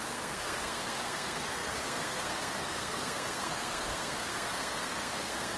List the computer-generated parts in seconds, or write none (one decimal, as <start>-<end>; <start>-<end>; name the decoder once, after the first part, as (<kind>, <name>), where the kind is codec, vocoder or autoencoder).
0.0-5.6 (codec, SNAC)